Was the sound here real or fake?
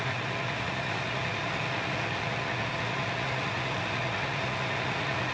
fake